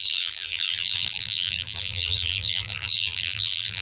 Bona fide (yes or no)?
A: no